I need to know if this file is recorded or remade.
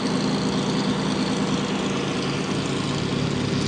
recorded